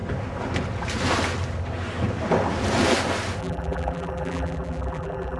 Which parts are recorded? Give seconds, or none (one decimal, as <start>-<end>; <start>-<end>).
0.0-3.4